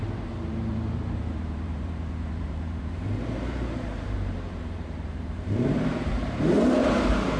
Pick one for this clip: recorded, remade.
remade